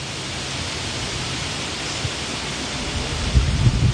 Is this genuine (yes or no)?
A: yes